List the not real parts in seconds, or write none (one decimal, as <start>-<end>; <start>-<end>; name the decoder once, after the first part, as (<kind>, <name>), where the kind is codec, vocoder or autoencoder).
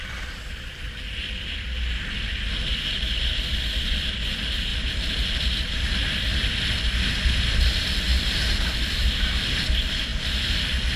none